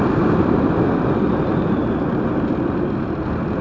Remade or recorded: recorded